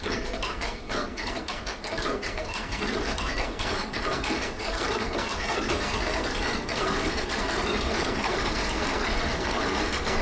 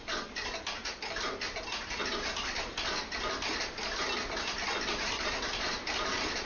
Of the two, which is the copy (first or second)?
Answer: first